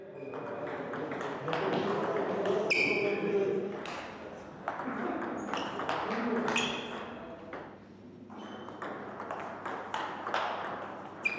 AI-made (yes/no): no